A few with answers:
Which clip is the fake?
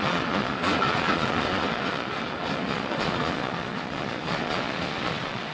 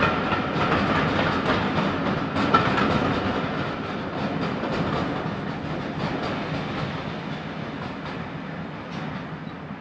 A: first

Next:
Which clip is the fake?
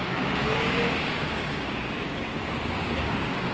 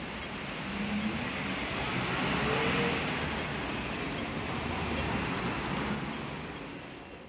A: first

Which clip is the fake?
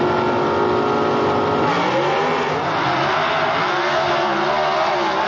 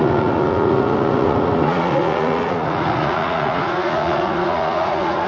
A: second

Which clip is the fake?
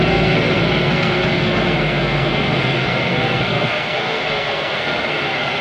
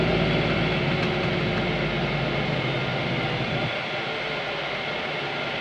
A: first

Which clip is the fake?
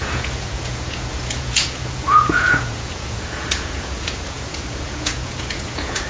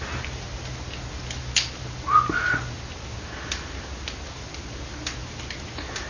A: first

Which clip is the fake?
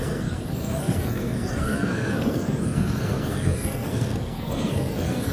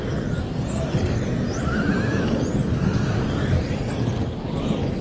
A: first